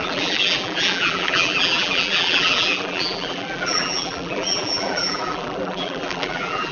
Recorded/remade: remade